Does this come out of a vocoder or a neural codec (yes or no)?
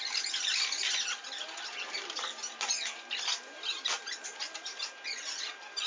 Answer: no